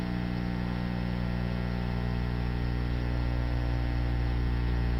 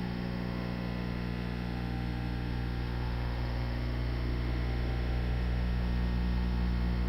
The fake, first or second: second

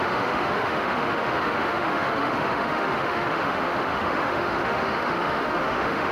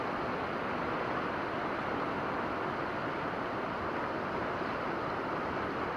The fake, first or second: first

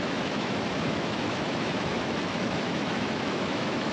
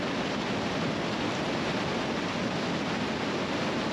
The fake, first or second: first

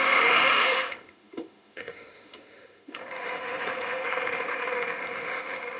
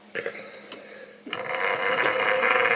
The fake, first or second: first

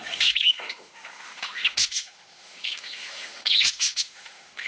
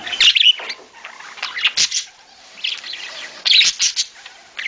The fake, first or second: first